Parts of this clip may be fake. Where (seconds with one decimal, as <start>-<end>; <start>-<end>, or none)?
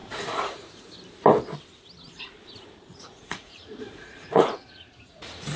0.0-0.9; 2.9-5.6